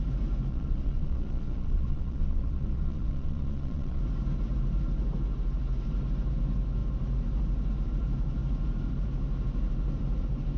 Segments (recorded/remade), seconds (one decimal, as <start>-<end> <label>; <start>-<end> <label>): 0.0-0.5 recorded; 0.5-4.0 remade; 4.0-10.6 recorded